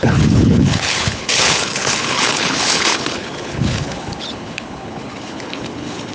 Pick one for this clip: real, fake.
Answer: fake